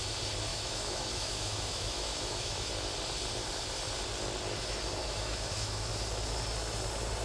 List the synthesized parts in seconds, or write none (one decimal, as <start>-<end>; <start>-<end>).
0.5-2.7; 5.0-5.9